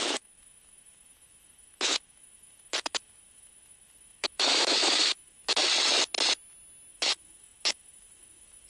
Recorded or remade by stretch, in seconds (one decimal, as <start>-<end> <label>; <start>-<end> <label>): 0.0-5.6 remade; 5.6-6.9 recorded; 6.9-8.7 remade